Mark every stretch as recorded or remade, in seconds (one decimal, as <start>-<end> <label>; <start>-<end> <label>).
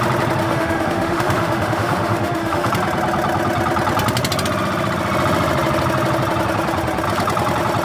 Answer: 0.0-0.4 recorded; 0.4-2.7 remade; 2.7-7.8 recorded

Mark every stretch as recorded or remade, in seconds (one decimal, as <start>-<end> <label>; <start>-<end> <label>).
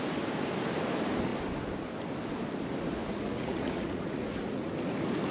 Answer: 0.0-3.0 recorded; 3.0-4.7 remade; 4.7-5.3 recorded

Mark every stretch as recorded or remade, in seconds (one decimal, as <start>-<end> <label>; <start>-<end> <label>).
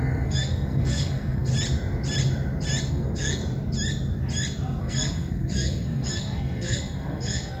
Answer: 0.0-1.5 remade; 1.5-2.9 recorded; 2.9-3.4 remade; 3.4-4.8 recorded; 4.8-7.6 remade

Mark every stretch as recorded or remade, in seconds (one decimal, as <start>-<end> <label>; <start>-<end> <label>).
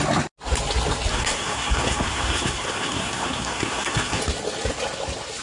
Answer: 0.0-1.1 recorded; 1.1-4.2 remade; 4.2-5.4 recorded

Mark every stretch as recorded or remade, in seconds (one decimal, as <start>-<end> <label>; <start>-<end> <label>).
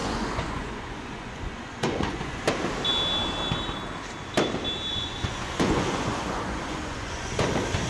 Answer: 0.0-2.4 remade; 2.4-4.9 recorded; 4.9-7.5 remade; 7.5-7.9 recorded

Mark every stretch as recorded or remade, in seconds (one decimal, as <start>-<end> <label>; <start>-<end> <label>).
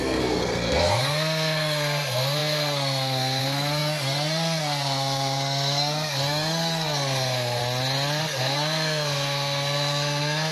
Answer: 0.0-7.6 remade; 7.6-8.2 recorded; 8.2-10.5 remade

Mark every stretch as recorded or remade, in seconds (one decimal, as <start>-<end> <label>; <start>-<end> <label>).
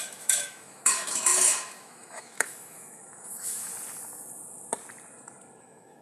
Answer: 0.0-3.7 remade; 3.7-5.6 recorded; 5.6-6.0 remade